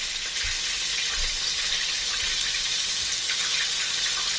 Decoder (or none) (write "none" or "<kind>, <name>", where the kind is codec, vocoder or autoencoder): none